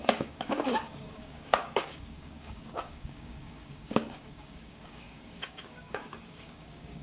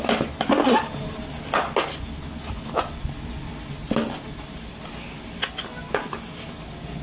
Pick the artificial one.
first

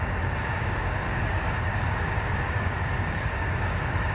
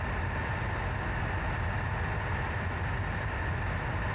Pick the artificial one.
first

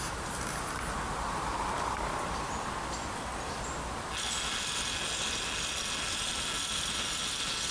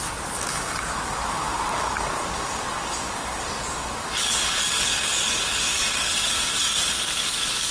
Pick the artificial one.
second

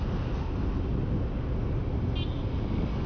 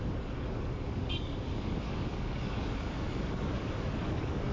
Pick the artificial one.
second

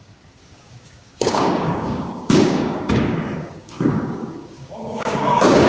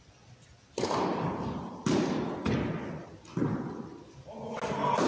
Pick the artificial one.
first